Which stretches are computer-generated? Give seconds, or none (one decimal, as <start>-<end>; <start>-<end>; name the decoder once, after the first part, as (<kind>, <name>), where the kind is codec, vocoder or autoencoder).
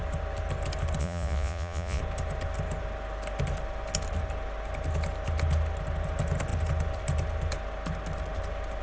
1.0-2.0 (vocoder, Vocos)